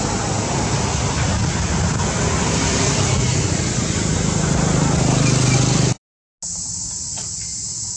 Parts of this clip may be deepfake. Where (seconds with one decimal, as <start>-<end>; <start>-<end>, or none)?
none

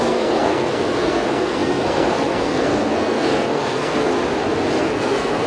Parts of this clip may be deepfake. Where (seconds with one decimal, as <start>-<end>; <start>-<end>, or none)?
0.0-4.1; 4.8-5.5

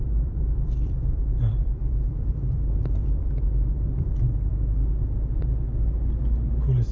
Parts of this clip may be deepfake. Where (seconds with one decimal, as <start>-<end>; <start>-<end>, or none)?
0.0-4.5

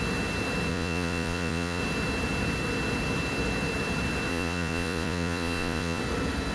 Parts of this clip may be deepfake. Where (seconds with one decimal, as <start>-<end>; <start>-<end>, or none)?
0.7-1.8; 4.3-6.0

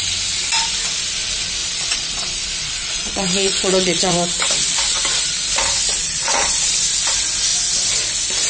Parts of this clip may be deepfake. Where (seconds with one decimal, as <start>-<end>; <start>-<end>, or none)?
1.6-4.1; 6.0-6.5

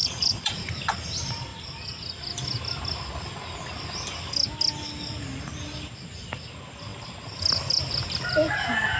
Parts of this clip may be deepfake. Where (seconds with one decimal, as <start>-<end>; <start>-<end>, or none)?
0.0-0.7